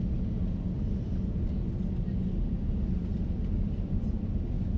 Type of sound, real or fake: real